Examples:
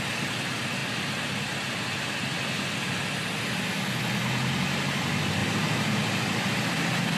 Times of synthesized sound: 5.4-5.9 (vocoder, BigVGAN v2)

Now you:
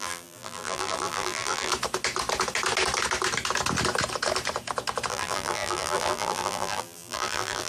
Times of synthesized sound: 0.0-1.7 (vocoder, BigVGAN v2); 5.1-7.7

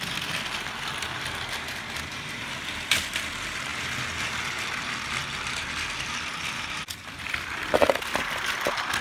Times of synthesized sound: 0.0-3.7 (vocoder, BigVGAN v2); 5.3-9.0

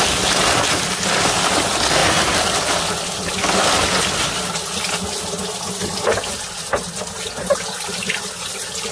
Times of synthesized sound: none